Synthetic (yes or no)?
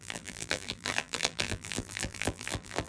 yes